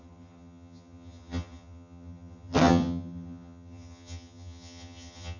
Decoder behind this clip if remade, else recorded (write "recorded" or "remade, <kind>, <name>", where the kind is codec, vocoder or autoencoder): remade, vocoder, HiFi-GAN